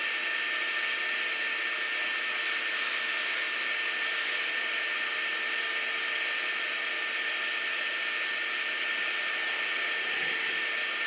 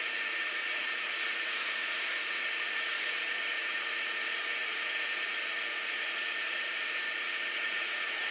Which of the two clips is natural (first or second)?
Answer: first